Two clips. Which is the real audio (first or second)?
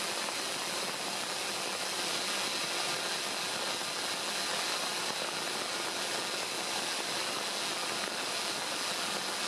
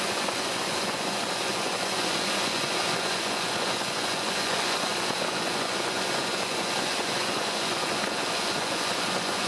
first